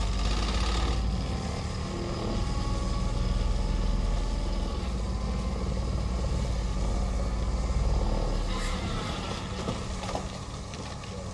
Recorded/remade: recorded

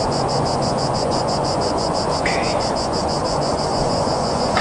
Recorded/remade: remade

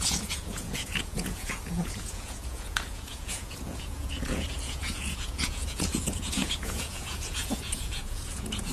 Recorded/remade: remade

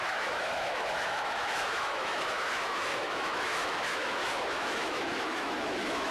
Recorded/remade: remade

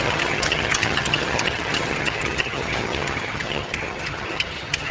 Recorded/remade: remade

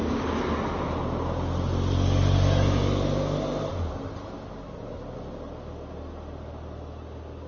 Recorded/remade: recorded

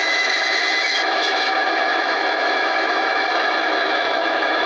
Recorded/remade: remade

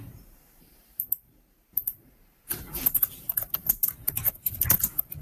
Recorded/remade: remade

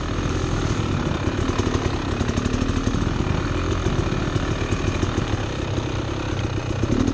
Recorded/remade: recorded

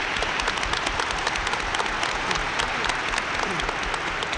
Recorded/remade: recorded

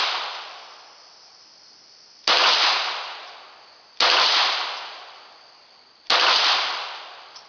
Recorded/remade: recorded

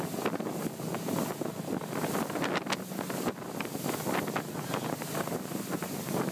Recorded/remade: recorded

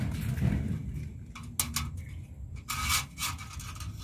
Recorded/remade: recorded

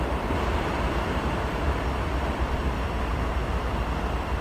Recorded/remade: remade